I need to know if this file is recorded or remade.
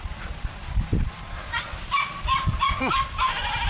recorded